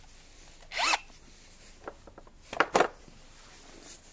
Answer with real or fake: real